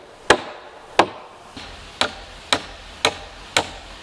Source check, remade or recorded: recorded